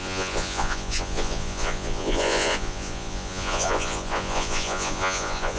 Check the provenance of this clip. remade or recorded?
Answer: remade